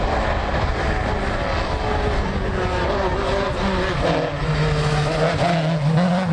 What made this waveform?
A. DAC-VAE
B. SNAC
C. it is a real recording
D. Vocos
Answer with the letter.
C